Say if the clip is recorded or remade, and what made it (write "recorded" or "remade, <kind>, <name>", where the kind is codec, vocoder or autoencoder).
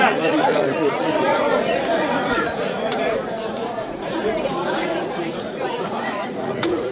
remade, vocoder, Vocos